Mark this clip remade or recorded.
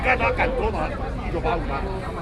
recorded